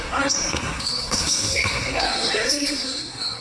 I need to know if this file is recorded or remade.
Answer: remade